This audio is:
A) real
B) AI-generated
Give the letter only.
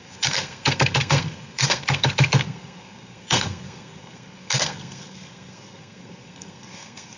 B